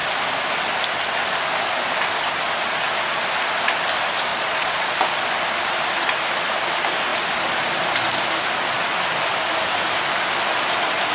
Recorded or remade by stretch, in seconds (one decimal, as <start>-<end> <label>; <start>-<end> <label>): 0.0-4.3 recorded; 4.3-5.2 remade; 5.2-11.1 recorded